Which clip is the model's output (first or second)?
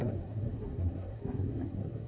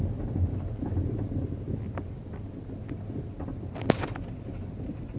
first